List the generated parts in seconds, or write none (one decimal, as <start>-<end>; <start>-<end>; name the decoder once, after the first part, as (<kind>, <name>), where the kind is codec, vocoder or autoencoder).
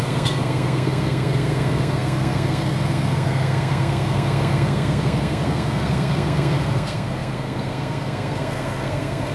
0.0-9.3 (codec, SNAC)